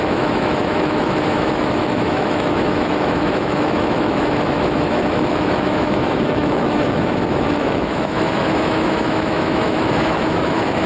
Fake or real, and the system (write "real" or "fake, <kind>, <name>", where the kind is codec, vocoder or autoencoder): fake, autoencoder, DAC-VAE